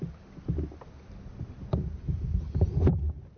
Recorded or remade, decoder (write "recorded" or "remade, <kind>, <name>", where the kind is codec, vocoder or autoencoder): recorded